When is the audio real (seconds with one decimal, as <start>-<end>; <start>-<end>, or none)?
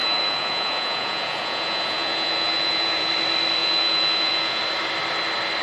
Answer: 3.1-3.6; 4.6-5.6